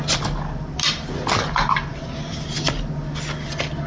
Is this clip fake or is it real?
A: real